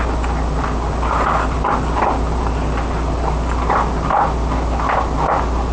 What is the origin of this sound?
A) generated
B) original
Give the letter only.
B